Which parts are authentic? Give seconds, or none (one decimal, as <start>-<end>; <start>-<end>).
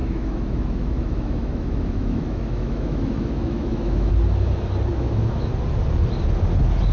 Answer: 4.1-4.9; 5.5-6.9